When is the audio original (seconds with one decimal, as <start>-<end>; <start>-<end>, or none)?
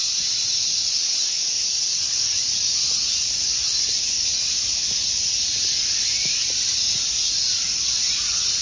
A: 0.0-0.8; 1.4-8.6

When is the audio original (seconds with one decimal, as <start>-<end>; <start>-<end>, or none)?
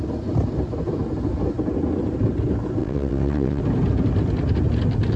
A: 0.0-2.8; 3.6-5.2